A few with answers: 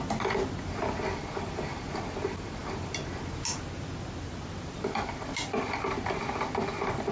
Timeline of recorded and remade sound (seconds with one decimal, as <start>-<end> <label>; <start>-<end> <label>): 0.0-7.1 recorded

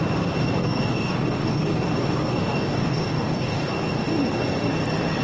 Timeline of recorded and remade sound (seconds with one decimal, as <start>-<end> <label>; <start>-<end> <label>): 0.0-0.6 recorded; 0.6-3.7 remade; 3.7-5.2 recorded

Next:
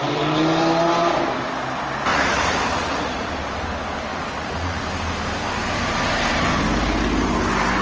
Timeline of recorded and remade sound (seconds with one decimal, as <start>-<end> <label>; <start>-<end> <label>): 0.0-2.1 recorded; 2.1-3.3 remade; 3.3-4.1 recorded; 4.1-4.8 remade; 4.8-7.8 recorded

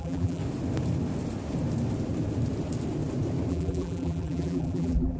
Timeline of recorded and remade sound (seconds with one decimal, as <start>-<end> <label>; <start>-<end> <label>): 0.0-0.4 remade; 0.4-3.5 recorded; 3.5-5.2 remade